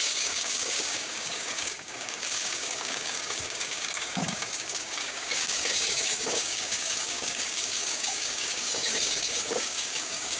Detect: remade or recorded remade